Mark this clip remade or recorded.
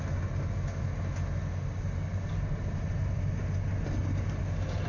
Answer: recorded